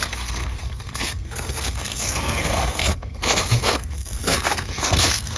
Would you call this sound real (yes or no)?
no